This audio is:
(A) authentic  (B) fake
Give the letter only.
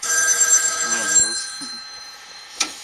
B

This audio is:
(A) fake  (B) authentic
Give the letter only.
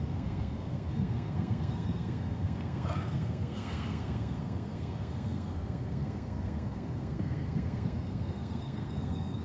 A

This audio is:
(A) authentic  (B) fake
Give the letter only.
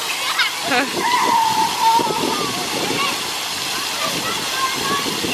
A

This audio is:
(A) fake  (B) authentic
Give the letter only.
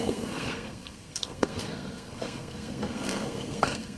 A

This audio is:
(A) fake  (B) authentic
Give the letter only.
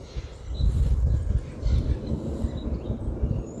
B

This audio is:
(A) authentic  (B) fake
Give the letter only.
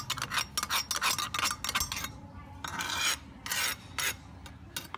A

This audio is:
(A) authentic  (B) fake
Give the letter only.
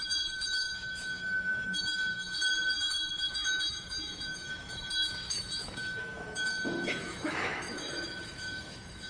B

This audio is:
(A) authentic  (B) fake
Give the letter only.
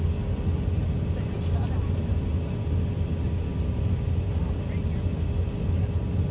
A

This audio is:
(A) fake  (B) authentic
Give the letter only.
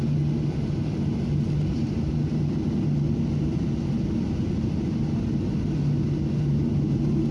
B